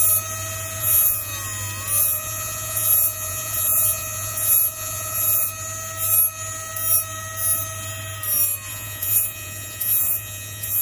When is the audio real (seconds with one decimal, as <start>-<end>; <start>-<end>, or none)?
0.0-0.8; 1.3-2.0; 5.5-8.7